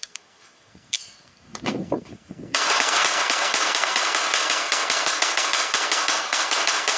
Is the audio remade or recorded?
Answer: remade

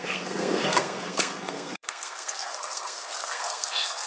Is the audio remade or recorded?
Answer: remade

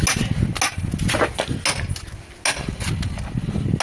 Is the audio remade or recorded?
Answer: recorded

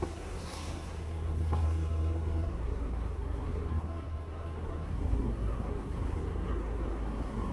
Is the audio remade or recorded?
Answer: remade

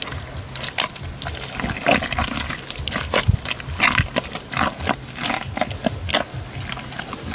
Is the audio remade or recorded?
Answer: recorded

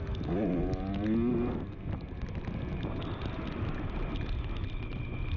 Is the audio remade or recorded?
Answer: recorded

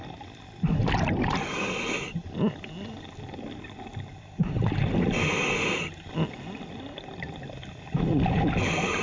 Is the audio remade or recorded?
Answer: recorded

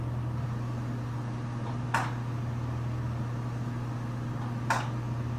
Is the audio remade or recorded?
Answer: recorded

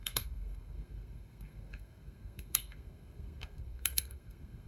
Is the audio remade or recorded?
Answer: remade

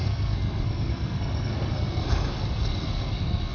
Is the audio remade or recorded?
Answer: remade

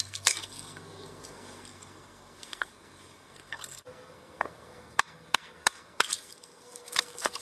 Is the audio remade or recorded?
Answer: remade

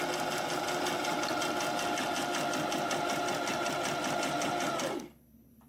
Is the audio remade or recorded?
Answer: recorded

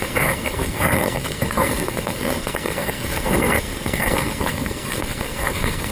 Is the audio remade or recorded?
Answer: remade